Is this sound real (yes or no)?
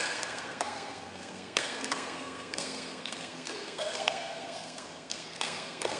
no